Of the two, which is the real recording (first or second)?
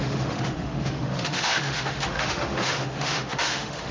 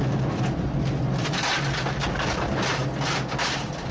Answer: second